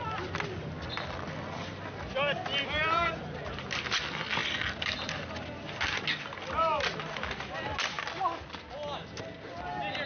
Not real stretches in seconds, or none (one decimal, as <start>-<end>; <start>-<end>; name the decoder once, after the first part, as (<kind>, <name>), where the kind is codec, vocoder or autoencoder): none